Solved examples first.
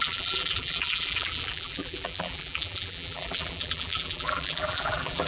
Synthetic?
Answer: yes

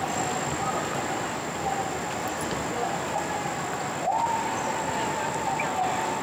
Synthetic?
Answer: no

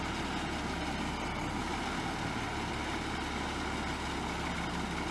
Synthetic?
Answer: no